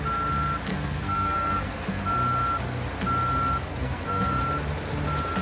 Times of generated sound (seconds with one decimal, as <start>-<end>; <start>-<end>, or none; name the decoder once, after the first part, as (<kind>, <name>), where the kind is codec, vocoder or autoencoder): 0.7-2.0 (codec, SNAC); 3.7-4.4